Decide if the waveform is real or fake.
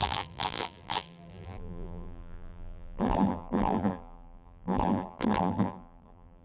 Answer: fake